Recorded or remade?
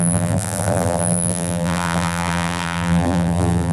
remade